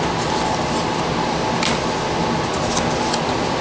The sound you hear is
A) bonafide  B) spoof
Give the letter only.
A